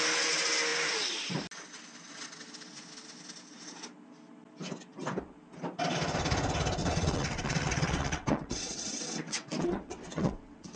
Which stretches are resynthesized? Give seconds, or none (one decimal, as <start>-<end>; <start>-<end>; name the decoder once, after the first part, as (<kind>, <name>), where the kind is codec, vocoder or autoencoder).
6.8-10.8 (vocoder, WaveNeXt)

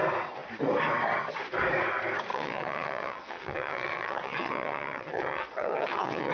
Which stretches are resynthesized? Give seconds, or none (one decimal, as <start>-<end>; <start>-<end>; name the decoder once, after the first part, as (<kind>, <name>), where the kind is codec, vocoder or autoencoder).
2.3-6.3 (vocoder, WaveNeXt)